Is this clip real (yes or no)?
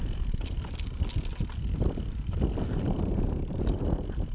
yes